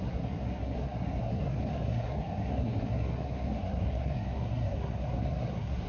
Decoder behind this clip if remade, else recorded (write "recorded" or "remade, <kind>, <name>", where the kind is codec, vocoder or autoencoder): remade, codec, SNAC